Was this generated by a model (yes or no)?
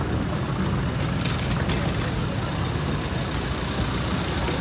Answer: no